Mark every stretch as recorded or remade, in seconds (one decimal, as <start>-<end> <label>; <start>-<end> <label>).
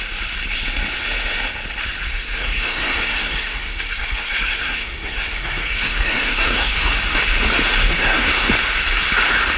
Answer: 0.0-2.1 recorded; 2.1-6.7 remade; 6.7-7.8 recorded; 7.8-8.5 remade; 8.5-9.6 recorded